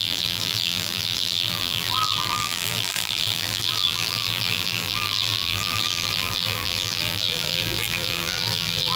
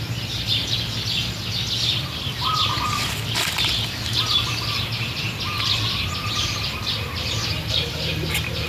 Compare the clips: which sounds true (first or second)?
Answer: second